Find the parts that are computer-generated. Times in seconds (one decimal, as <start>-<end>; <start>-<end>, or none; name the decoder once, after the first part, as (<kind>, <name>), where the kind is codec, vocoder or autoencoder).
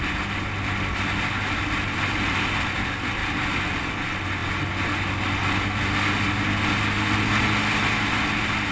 none